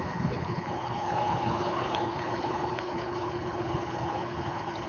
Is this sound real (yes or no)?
no